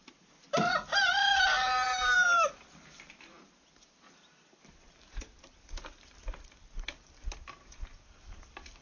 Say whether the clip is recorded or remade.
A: remade